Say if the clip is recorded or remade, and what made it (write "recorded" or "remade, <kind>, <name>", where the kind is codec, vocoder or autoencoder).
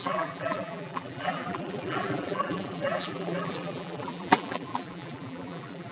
remade, vocoder, BigVGAN v2